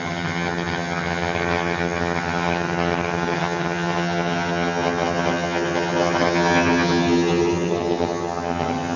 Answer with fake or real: fake